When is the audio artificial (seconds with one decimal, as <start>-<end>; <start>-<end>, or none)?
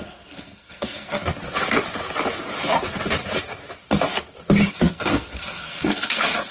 0.0-1.2; 4.7-6.5